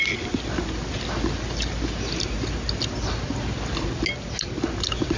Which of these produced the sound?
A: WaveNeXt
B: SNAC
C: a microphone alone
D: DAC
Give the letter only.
C